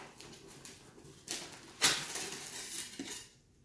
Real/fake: real